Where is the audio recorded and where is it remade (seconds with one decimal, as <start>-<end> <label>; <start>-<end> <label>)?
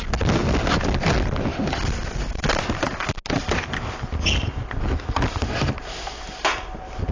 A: 0.0-7.1 recorded